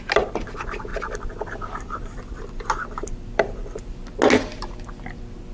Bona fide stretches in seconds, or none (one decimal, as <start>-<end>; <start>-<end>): 0.0-0.9; 4.2-5.5

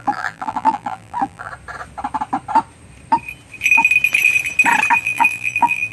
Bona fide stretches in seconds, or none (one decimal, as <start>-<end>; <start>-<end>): 1.5-5.0

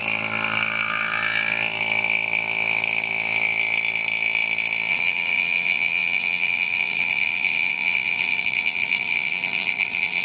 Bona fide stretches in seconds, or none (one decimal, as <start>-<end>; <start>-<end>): 0.0-4.9

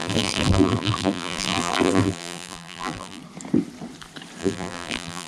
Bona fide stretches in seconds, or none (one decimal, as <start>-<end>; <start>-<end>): 3.2-4.4

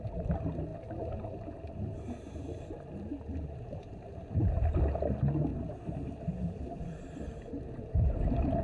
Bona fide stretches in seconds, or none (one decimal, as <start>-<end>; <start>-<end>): 0.0-0.7; 4.8-5.5; 8.2-8.6

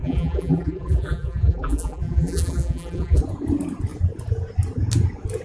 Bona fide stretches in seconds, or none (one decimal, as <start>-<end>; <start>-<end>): 3.2-5.4

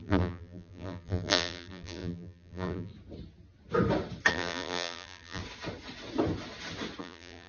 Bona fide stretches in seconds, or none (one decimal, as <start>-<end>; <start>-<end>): 2.9-4.3; 5.4-7.0